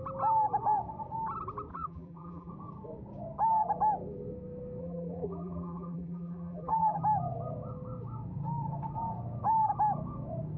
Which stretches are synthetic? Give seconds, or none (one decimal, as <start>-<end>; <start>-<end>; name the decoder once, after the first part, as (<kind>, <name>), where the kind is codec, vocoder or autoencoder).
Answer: 1.7-2.5 (vocoder, BigVGAN v2); 4.8-7.0